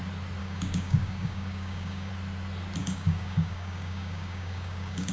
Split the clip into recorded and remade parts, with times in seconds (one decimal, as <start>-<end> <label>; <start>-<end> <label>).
0.0-0.4 recorded; 0.4-2.1 remade; 2.1-2.8 recorded; 2.8-5.1 remade